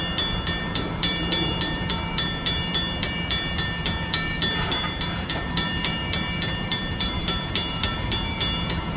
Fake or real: fake